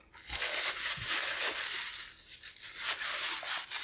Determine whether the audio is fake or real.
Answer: real